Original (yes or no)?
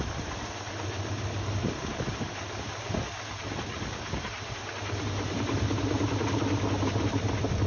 yes